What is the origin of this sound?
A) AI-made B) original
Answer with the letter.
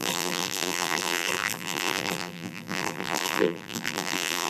A